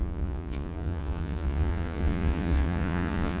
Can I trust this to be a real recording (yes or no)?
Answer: no